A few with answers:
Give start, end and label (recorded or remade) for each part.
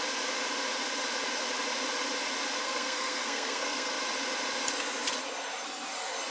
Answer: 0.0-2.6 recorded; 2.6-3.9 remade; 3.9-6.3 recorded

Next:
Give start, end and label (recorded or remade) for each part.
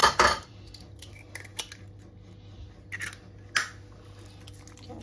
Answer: 0.0-0.6 remade; 0.6-5.0 recorded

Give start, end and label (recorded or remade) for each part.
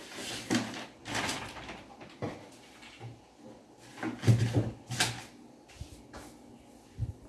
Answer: 0.0-7.3 recorded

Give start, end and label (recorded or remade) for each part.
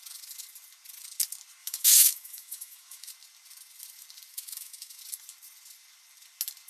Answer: 0.0-1.6 recorded; 1.6-3.1 remade; 3.1-4.3 recorded; 4.3-5.0 remade; 5.0-6.7 recorded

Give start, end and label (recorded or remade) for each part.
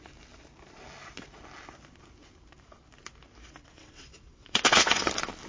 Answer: 0.0-3.6 recorded; 3.6-5.1 remade; 5.1-5.5 recorded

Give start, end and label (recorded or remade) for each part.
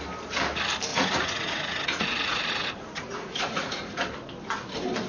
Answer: 0.0-0.9 recorded; 0.9-4.0 remade; 4.0-5.1 recorded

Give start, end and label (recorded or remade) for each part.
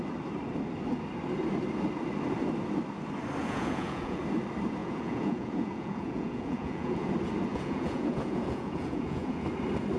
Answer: 0.0-3.4 recorded; 3.4-4.2 remade; 4.2-4.8 recorded; 4.8-7.1 remade; 7.1-7.5 recorded; 7.5-9.4 remade; 9.4-10.0 recorded